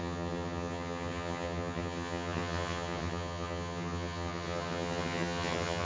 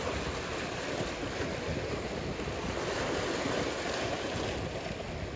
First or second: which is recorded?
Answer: second